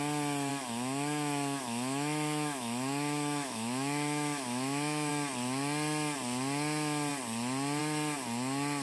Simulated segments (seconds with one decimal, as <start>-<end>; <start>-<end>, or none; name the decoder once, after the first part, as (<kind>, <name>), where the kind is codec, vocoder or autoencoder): 0.5-5.1 (autoencoder, DAC-VAE)

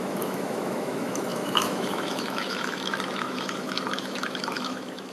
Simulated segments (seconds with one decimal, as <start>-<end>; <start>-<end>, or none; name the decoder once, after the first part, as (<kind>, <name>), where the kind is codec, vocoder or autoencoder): 0.0-5.1 (autoencoder, DAC-VAE)

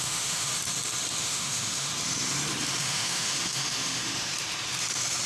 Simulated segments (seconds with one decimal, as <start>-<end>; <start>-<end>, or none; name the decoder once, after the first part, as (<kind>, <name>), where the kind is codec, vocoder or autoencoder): 0.0-0.5 (autoencoder, DAC-VAE); 1.2-1.9; 2.8-4.3

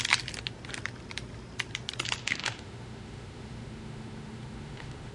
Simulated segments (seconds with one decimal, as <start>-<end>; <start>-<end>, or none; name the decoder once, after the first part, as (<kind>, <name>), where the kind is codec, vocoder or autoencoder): 2.2-5.1 (autoencoder, DAC-VAE)

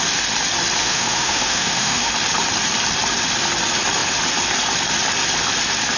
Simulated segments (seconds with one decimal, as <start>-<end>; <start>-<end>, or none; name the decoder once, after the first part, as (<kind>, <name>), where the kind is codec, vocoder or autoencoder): 0.8-2.1 (autoencoder, DAC-VAE)